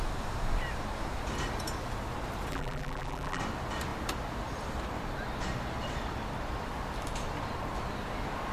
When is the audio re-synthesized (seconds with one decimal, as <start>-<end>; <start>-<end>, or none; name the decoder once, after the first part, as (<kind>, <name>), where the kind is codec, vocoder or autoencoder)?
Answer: 2.5-3.4 (vocoder, BigVGAN v2)